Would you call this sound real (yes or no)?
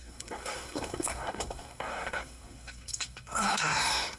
no